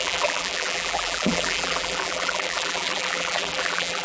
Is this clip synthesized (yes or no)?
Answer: yes